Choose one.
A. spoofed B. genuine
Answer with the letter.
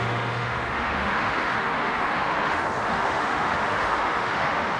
A